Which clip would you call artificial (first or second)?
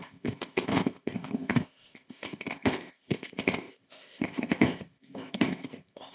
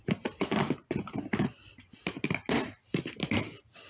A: first